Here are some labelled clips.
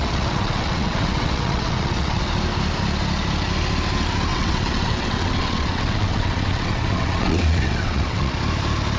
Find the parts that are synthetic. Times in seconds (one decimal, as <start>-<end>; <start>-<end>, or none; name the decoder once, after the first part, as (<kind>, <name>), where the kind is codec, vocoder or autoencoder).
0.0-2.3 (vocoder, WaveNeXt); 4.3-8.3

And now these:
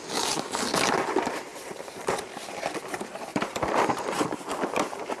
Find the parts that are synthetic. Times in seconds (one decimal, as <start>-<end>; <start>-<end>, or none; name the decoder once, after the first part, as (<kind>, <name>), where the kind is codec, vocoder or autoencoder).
1.5-2.6 (vocoder, BigVGAN v2); 3.3-5.2

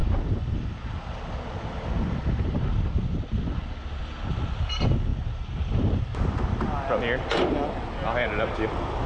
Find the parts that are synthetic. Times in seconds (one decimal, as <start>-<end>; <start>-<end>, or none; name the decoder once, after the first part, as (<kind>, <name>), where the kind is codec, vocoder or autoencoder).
none

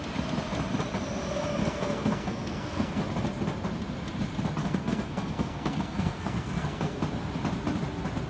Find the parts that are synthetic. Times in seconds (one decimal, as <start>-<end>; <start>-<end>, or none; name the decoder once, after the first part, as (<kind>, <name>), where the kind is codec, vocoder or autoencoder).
1.6-3.0 (codec, SNAC); 4.6-7.0

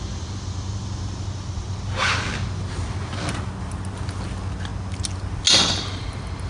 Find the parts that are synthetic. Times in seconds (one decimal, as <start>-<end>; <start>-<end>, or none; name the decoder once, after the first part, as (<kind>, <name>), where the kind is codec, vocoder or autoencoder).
none

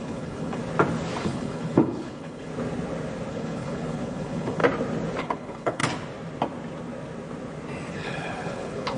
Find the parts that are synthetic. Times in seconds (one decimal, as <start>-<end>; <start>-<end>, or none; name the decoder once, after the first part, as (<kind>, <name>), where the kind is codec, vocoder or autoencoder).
0.0-0.6 (codec, HILCodec); 1.2-2.5; 3.3-4.6; 5.2-5.8; 7.9-9.0

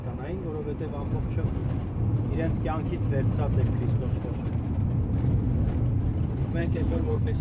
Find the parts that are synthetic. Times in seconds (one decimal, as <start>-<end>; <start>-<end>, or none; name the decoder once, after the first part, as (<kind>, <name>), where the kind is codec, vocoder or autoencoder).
6.6-7.4 (codec, SNAC)

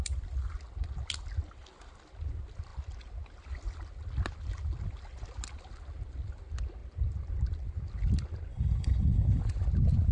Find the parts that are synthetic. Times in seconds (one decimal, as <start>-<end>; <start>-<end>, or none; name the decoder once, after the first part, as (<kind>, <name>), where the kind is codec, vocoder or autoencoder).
8.5-9.4 (codec, HILCodec)